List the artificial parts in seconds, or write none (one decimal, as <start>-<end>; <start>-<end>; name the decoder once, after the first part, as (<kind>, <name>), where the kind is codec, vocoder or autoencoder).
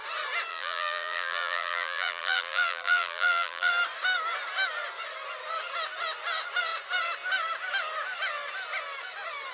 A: 0.5-3.7 (vocoder, BigVGAN v2)